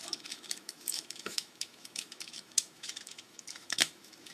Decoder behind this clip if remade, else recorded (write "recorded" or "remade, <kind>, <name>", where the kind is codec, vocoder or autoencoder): remade, autoencoder, DAC-VAE